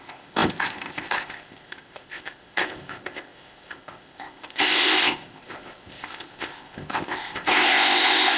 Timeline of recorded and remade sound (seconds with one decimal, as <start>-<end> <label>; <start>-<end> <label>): 0.0-8.4 remade